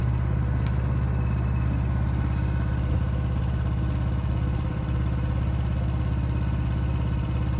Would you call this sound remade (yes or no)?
no